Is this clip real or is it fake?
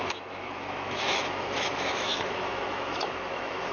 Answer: fake